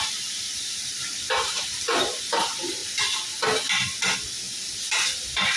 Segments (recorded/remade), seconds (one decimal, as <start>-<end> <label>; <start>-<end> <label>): 0.0-2.8 remade; 2.8-5.6 recorded